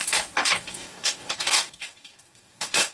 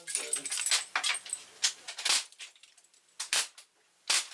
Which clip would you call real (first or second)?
second